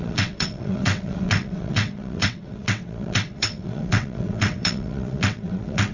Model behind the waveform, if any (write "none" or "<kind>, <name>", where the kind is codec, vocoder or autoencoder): vocoder, WaveNeXt